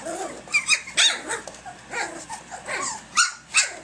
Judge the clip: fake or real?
real